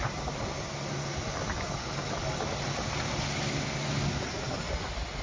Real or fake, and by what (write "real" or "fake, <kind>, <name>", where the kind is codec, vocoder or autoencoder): real